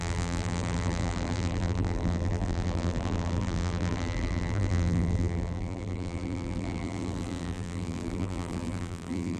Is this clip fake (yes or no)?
yes